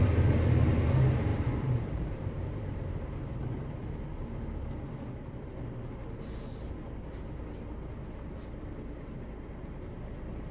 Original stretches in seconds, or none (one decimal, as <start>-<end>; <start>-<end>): 0.0-1.3; 4.6-10.5